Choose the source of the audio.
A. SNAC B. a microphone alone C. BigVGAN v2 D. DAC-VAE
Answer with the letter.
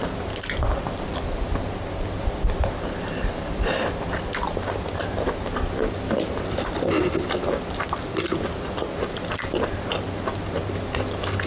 B